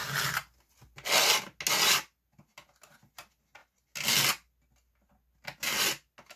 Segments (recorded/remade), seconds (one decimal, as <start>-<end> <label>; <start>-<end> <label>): 0.0-6.4 recorded